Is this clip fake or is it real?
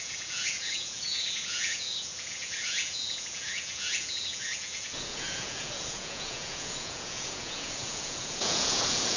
fake